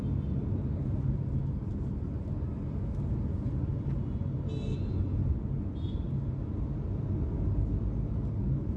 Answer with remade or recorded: recorded